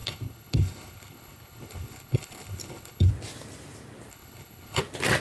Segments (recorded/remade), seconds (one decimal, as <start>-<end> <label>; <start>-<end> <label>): 0.0-3.1 remade; 3.1-4.1 recorded; 4.1-4.8 remade; 4.8-5.2 recorded